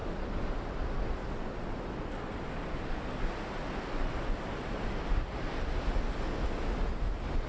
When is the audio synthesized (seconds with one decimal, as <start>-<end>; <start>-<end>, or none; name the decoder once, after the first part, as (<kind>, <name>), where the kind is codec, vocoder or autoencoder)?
none